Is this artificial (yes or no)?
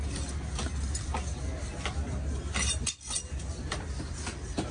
no